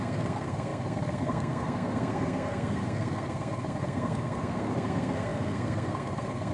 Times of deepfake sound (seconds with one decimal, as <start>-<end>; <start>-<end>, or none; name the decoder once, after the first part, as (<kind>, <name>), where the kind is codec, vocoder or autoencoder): 0.0-6.5 (codec, SNAC)